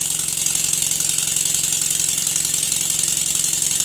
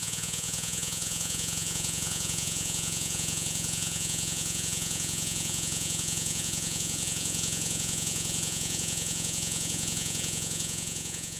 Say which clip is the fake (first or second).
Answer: second